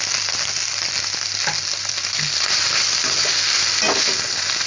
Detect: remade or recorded recorded